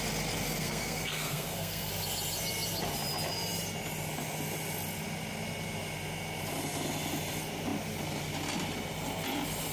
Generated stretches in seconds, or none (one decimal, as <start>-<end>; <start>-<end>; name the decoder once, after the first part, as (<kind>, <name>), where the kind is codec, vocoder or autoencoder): 0.6-1.9 (codec, SNAC)